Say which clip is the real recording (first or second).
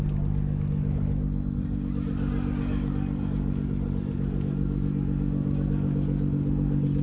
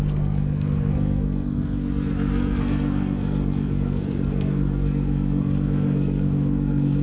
first